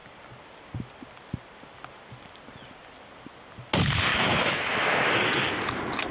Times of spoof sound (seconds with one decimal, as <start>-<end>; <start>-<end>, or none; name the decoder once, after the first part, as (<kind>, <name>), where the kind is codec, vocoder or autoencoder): 4.1-5.6 (autoencoder, DAC-VAE)